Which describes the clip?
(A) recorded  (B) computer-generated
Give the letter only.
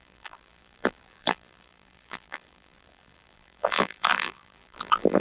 B